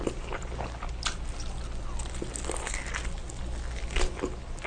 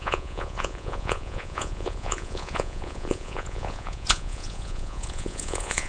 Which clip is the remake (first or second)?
second